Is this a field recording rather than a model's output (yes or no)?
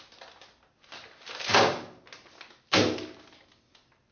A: yes